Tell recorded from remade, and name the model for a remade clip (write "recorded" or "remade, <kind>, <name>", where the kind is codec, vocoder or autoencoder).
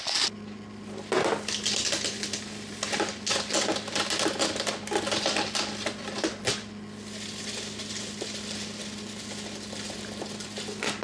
recorded